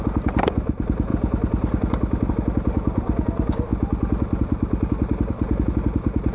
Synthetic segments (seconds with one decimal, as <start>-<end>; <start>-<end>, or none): none